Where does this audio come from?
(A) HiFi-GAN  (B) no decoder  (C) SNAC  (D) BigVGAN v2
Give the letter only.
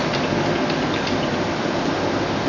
B